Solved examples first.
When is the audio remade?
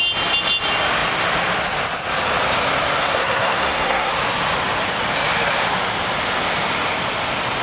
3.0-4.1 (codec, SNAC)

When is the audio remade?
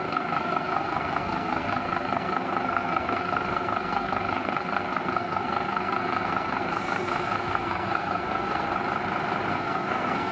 0.0-8.7 (codec, SNAC); 9.5-10.3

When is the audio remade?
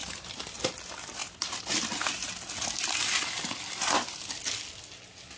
none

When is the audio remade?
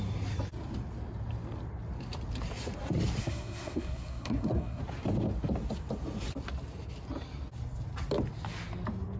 3.2-4.8 (codec, SNAC)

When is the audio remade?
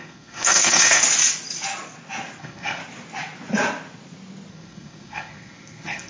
0.0-1.0 (codec, SNAC); 2.4-2.8; 4.5-6.1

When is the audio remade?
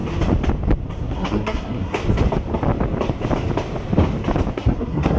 0.9-2.0 (codec, SNAC); 4.5-5.2